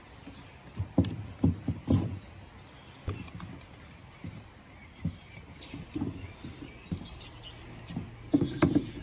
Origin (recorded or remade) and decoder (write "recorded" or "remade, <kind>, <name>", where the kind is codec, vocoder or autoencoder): recorded